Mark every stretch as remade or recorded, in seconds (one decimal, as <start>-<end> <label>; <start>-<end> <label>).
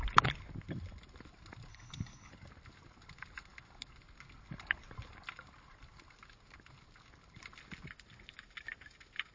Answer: 0.0-1.7 recorded; 1.7-2.3 remade; 2.3-9.3 recorded